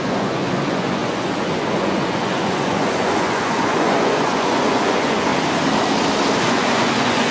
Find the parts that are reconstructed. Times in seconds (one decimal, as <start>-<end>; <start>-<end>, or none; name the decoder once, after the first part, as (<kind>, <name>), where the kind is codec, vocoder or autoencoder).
0.0-5.3 (vocoder, Vocos); 6.4-7.3